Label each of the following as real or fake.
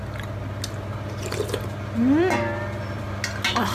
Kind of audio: real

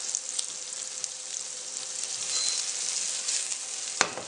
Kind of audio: real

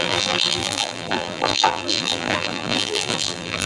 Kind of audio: fake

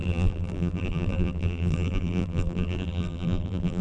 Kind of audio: fake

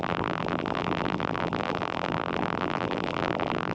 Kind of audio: fake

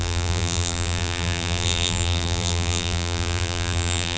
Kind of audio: fake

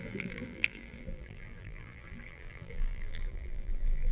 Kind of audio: fake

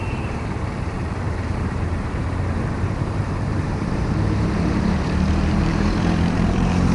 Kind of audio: fake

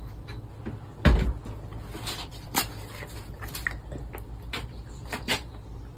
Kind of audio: real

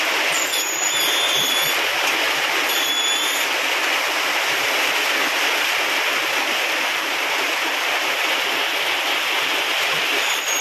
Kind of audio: fake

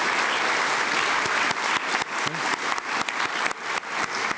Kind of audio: real